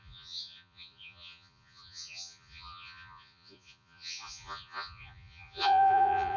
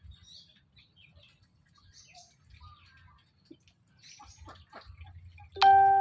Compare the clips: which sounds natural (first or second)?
second